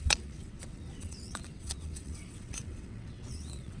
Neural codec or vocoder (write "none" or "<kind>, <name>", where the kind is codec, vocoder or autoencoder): vocoder, WaveNeXt